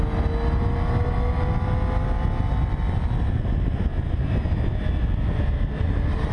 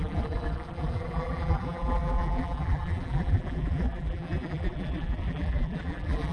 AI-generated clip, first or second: second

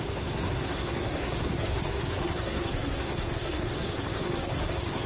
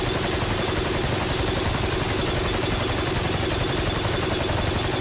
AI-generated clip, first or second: first